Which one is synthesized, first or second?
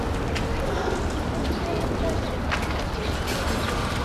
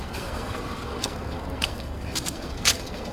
second